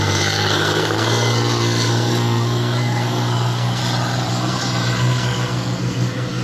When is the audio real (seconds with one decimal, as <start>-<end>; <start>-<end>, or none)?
3.8-4.3